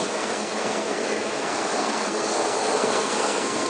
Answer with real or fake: fake